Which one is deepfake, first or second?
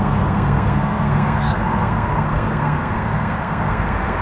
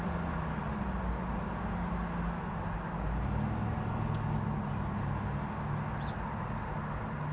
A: first